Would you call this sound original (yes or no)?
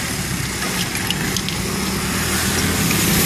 yes